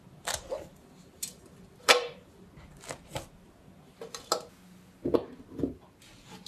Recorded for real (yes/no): yes